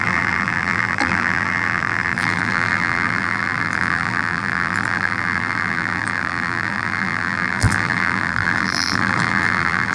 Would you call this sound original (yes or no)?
no